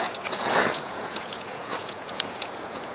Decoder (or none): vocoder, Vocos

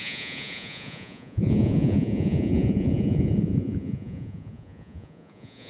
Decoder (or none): vocoder, Vocos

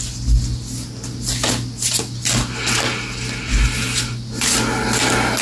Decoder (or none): none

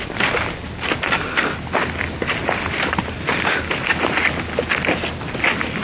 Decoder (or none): none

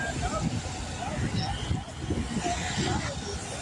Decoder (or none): none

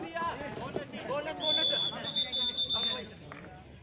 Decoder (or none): none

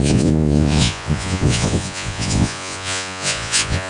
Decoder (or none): vocoder, Vocos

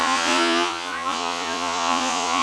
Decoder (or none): vocoder, Vocos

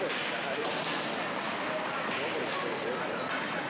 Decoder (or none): none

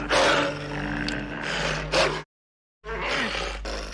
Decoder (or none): none